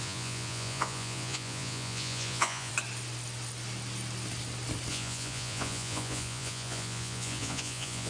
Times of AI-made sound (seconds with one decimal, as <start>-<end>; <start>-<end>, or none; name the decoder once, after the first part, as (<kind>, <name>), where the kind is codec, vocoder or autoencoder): 0.0-2.7 (vocoder, Vocos); 4.9-8.1